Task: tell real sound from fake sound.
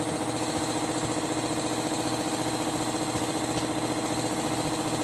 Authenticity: real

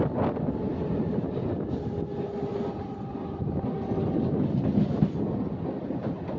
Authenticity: real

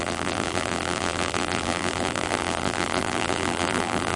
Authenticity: fake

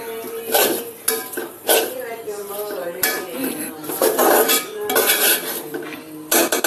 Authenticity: real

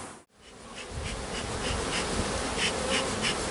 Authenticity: real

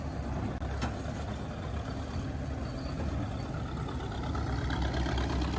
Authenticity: real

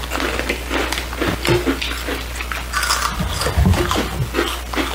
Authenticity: real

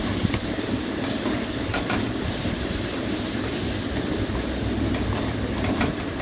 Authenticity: fake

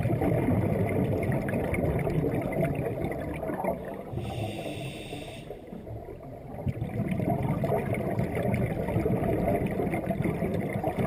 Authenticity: fake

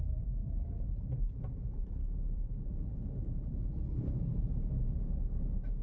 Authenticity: fake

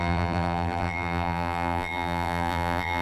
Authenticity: fake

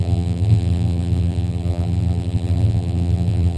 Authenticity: fake